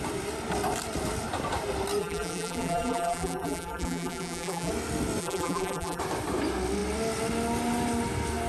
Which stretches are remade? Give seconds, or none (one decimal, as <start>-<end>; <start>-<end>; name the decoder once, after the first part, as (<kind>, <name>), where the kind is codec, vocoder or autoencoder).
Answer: 2.0-4.7 (vocoder, BigVGAN v2); 5.2-6.0

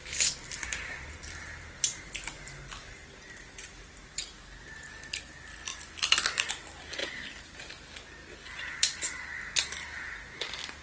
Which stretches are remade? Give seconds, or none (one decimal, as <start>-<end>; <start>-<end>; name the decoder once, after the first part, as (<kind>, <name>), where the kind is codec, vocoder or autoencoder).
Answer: 0.0-2.6 (vocoder, BigVGAN v2); 7.0-7.7; 8.2-9.2

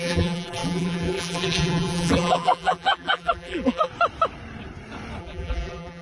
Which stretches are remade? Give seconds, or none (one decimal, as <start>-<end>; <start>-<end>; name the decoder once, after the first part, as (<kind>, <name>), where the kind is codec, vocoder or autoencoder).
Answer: 0.0-3.9 (vocoder, BigVGAN v2); 5.2-6.0

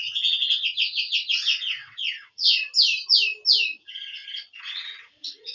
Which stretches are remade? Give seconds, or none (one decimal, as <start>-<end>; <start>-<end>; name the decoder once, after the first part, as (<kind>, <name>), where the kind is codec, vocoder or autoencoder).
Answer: 0.0-2.6 (vocoder, WaveNeXt); 3.8-5.5

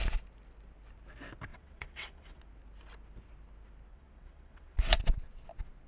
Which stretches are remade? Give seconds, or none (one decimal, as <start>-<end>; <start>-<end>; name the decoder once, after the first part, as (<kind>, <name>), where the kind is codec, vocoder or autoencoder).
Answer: 1.5-2.4 (vocoder, WaveNeXt); 3.9-5.0

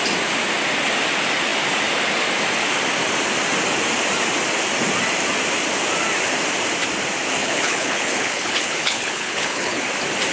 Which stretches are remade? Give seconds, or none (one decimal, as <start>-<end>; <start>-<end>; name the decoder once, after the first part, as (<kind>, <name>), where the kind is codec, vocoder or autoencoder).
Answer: 7.4-9.8 (codec, HILCodec)